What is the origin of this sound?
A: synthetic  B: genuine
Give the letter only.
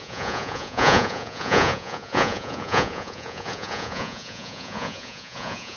A